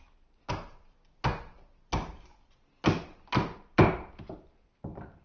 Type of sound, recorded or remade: recorded